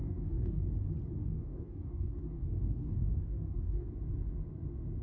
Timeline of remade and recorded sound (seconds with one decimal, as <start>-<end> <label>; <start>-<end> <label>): 0.0-0.6 remade; 0.6-1.2 recorded; 1.2-3.9 remade; 3.9-5.0 recorded